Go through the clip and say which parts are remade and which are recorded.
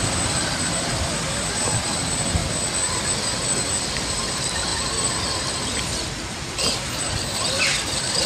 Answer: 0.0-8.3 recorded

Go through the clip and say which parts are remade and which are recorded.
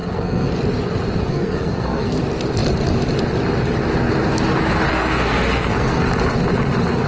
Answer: 0.0-0.5 remade; 0.5-1.3 recorded; 1.3-2.2 remade; 2.2-4.9 recorded; 4.9-6.1 remade; 6.1-7.1 recorded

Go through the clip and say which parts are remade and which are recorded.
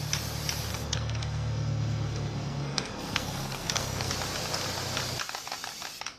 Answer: 0.0-0.7 recorded; 0.7-4.1 remade; 4.1-6.2 recorded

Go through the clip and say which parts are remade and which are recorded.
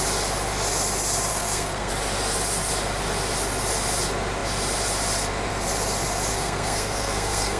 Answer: 0.0-1.3 recorded; 1.3-1.9 remade; 1.9-6.3 recorded; 6.3-7.6 remade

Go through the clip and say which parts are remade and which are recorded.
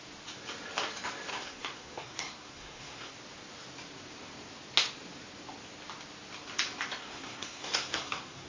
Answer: 0.0-1.3 recorded; 1.3-3.1 remade; 3.1-7.0 recorded; 7.0-8.5 remade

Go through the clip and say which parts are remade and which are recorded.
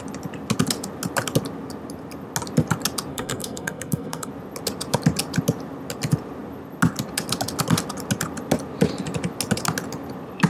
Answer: 0.0-3.1 recorded; 3.1-4.3 remade; 4.3-10.5 recorded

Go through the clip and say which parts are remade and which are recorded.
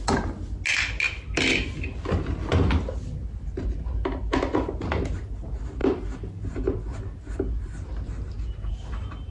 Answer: 0.0-9.3 recorded